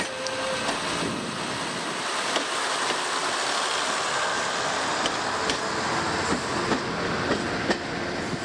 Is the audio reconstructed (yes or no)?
no